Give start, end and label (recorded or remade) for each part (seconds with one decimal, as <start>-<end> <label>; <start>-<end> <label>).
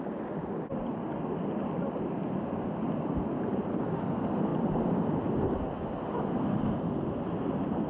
0.0-7.9 recorded